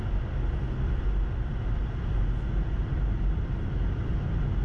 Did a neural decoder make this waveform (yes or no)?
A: no